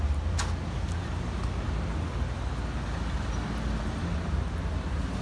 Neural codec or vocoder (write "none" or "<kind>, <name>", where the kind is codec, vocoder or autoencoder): none